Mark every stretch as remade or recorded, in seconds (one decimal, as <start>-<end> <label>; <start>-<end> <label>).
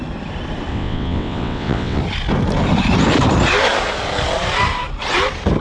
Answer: 0.0-0.7 recorded; 0.7-2.0 remade; 2.0-5.6 recorded